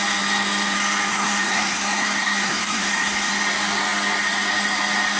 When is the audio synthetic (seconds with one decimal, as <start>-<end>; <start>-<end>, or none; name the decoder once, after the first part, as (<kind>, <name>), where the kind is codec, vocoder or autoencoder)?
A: 1.1-3.3 (codec, SNAC)